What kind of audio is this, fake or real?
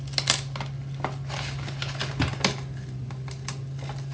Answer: real